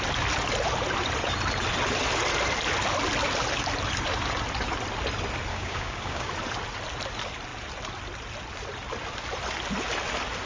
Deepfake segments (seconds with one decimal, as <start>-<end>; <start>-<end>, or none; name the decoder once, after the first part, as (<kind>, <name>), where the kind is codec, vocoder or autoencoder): 5.5-6.3 (codec, DAC)